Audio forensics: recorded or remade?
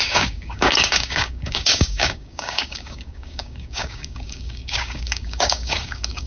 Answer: remade